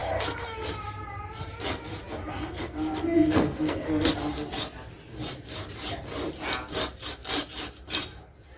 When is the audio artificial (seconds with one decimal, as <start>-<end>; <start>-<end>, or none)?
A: 0.0-0.8; 2.2-4.1